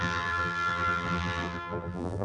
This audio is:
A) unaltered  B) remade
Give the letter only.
B